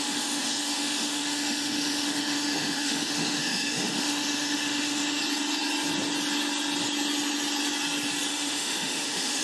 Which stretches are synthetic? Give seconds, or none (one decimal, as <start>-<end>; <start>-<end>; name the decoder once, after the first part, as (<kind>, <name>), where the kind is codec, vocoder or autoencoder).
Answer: 0.0-5.2 (autoencoder, DAC-VAE); 8.3-9.4